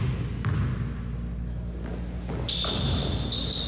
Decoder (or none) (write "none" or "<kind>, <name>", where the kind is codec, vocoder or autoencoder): none